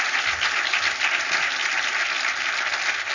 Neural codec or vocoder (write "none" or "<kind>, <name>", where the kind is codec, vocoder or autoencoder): none